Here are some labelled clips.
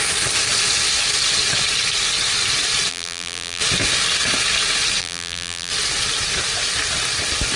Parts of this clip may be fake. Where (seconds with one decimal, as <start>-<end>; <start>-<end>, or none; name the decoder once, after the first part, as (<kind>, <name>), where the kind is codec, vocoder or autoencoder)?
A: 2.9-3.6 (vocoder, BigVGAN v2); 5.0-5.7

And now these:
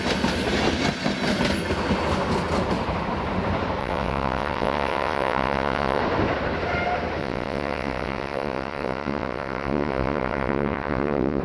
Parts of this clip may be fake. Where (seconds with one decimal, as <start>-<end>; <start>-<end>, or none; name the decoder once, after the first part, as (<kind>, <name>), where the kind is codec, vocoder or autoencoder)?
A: 3.8-6.0 (vocoder, WaveNeXt); 7.2-11.4

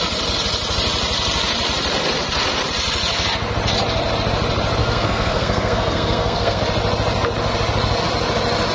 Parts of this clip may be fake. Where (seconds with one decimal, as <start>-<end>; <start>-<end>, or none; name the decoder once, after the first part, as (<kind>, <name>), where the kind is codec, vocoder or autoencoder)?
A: 4.8-6.6 (codec, SNAC)

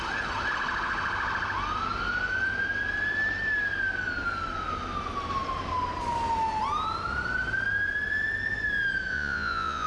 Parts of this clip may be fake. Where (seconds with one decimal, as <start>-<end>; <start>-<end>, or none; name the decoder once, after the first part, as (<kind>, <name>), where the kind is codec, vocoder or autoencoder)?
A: 9.1-9.9 (vocoder, Vocos)